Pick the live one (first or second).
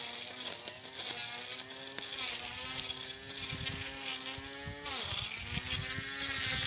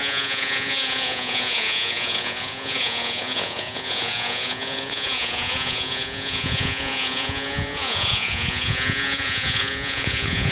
first